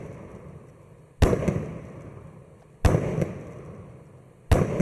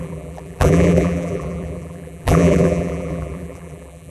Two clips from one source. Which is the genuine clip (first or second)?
first